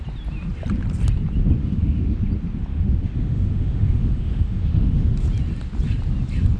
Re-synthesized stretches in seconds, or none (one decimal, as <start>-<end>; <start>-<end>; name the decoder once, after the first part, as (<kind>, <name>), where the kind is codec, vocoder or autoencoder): 1.6-2.2 (autoencoder, DAC-VAE); 2.7-5.1